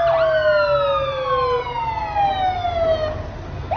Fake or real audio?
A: real